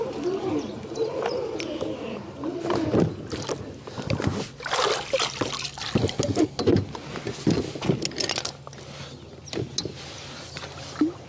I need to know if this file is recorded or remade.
recorded